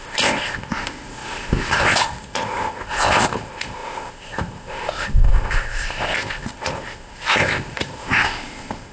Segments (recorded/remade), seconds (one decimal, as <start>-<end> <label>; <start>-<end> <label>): 0.0-8.9 remade